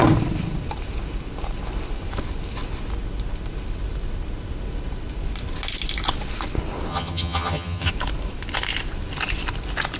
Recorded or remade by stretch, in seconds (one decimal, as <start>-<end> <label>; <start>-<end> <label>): 0.0-6.9 recorded; 6.9-7.9 remade; 7.9-10.0 recorded